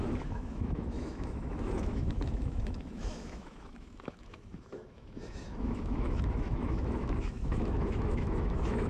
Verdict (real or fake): fake